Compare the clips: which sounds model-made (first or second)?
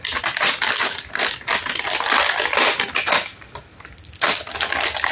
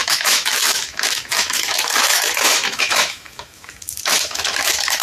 second